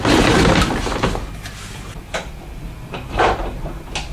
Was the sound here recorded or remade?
recorded